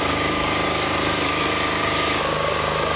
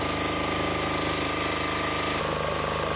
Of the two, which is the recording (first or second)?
second